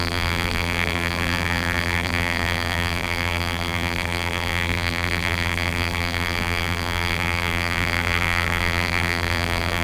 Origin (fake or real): fake